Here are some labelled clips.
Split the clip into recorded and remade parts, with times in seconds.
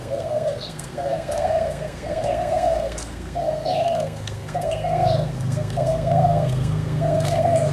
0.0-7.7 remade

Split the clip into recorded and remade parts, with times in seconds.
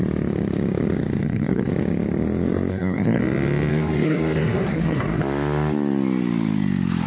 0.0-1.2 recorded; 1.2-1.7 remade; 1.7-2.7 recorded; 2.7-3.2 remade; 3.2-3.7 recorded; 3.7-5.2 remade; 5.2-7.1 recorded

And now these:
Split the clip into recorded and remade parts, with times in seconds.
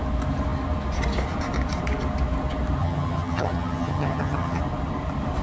0.0-2.8 recorded; 2.8-4.6 remade; 4.6-5.4 recorded